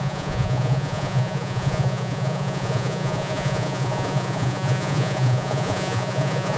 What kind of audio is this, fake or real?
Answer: fake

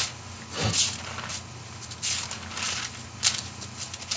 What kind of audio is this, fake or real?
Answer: real